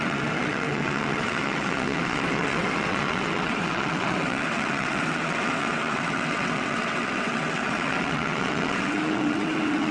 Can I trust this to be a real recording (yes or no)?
no